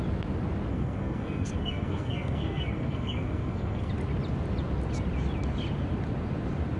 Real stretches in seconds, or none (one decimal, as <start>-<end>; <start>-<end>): 0.0-0.7; 3.9-6.8

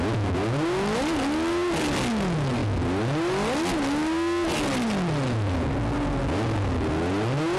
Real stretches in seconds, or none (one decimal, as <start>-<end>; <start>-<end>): 0.0-7.6

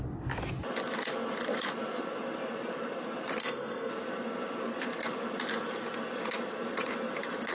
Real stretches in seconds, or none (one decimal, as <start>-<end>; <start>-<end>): 0.0-3.4; 3.9-7.5

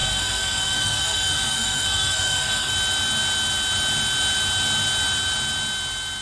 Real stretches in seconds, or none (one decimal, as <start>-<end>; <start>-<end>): 2.7-6.2